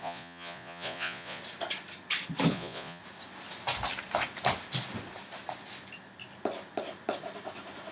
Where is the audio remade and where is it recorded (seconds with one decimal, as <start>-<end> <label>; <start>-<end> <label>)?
0.0-1.4 remade; 1.4-2.5 recorded; 2.5-3.0 remade; 3.0-7.9 recorded